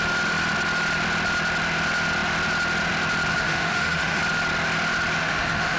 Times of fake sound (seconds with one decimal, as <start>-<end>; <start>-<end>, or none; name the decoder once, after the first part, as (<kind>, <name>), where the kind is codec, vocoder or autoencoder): 3.3-4.2 (autoencoder, DAC-VAE); 5.2-5.8